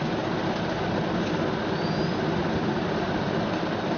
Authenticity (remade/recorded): recorded